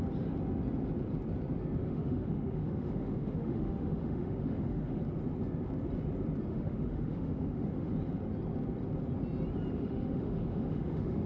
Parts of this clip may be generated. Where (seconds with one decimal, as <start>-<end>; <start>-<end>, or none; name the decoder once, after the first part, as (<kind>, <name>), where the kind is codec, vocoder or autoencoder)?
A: 1.8-5.0 (autoencoder, DAC-VAE); 6.5-7.9; 9.7-11.3